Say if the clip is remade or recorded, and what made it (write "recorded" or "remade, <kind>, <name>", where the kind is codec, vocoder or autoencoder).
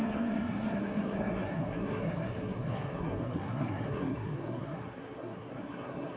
remade, codec, SNAC